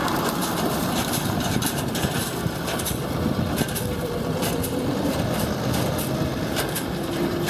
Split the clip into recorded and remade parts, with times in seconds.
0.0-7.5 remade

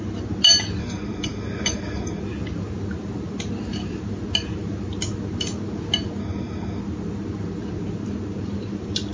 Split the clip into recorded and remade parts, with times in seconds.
0.0-0.8 recorded; 0.8-2.2 remade; 2.2-6.2 recorded; 6.2-6.8 remade; 6.8-9.1 recorded